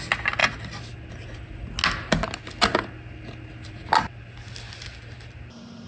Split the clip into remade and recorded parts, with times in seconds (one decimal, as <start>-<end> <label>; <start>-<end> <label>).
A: 0.0-5.9 recorded

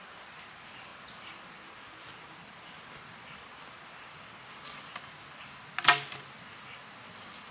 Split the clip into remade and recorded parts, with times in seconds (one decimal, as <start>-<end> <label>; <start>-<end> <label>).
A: 0.0-7.5 recorded

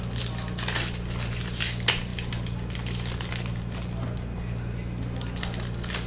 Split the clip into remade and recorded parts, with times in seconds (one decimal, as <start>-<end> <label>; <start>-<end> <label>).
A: 0.0-6.1 recorded

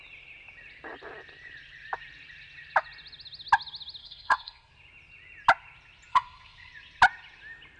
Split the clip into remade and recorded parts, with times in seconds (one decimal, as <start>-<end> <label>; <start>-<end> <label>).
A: 0.0-4.0 recorded; 4.0-4.7 remade; 4.7-6.1 recorded; 6.1-6.7 remade; 6.7-7.8 recorded

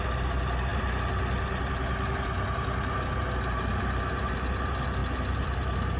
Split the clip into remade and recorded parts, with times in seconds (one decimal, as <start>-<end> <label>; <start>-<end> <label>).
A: 0.0-5.0 recorded; 5.0-6.0 remade

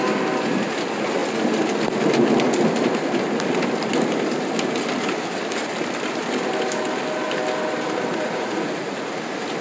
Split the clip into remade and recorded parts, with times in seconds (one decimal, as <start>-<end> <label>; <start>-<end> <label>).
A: 0.0-8.1 recorded; 8.1-9.2 remade; 9.2-9.6 recorded

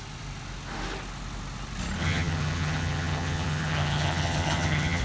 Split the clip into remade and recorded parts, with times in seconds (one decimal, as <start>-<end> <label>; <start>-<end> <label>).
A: 0.0-2.0 recorded; 2.0-5.0 remade

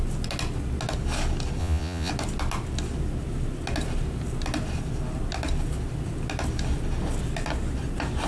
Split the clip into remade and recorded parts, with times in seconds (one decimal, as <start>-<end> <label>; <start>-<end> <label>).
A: 0.0-1.6 recorded; 1.6-2.1 remade; 2.1-8.3 recorded